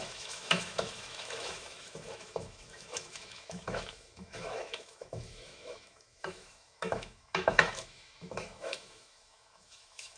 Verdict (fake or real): fake